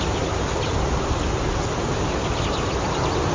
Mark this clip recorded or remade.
recorded